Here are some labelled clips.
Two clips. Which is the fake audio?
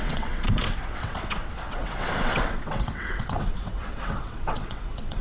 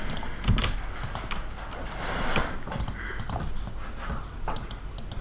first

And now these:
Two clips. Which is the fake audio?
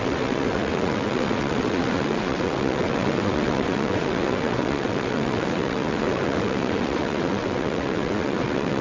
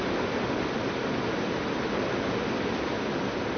first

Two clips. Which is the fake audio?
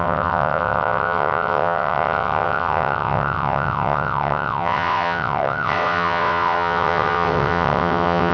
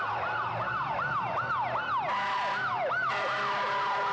first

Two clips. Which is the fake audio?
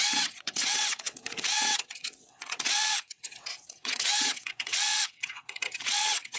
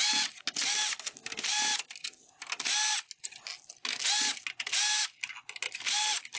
first